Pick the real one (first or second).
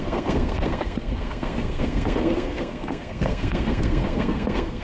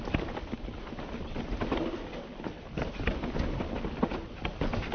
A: second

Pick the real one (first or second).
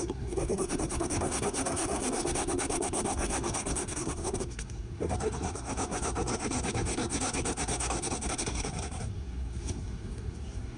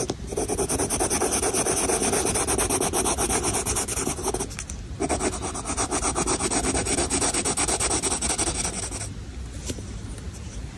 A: second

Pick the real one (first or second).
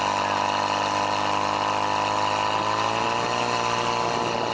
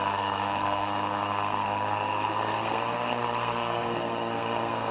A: first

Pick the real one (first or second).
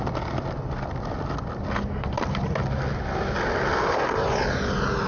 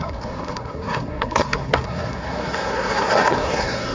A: first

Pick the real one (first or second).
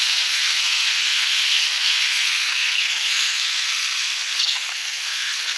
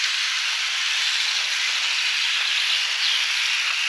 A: second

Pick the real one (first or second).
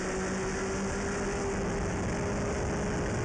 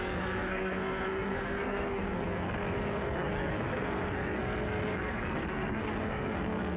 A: first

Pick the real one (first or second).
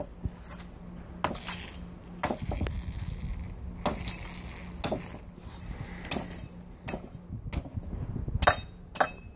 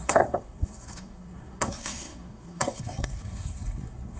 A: first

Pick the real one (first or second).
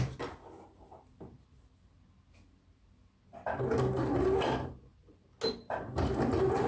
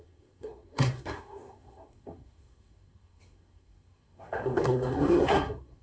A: first